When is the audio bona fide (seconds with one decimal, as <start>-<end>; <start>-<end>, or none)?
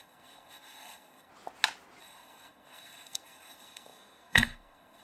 1.3-2.0